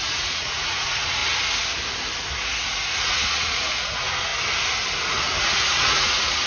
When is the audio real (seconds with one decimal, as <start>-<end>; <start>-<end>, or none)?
1.2-3.0; 4.3-5.4